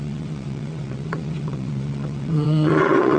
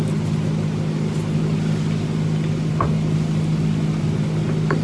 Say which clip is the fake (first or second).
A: first